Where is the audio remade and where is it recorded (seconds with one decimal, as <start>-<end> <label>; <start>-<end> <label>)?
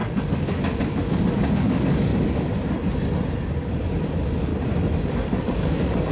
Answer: 0.0-2.1 remade; 2.1-4.0 recorded; 4.0-4.5 remade; 4.5-5.1 recorded; 5.1-6.1 remade